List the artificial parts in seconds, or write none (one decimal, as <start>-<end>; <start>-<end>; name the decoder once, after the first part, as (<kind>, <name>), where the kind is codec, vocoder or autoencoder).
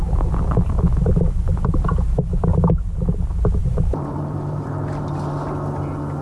3.6-4.7 (vocoder, BigVGAN v2)